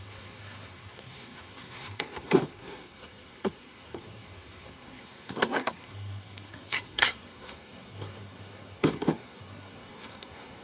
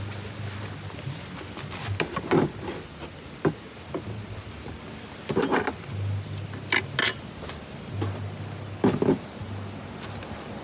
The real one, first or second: second